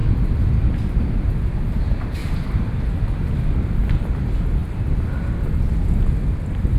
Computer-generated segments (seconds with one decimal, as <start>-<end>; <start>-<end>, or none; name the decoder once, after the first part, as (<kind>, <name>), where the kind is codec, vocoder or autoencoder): 2.2-2.8 (vocoder, BigVGAN v2)